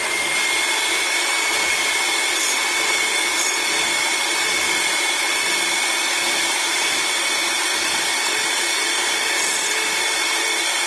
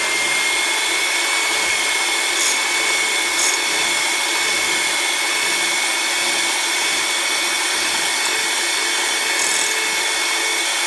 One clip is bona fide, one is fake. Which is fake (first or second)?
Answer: first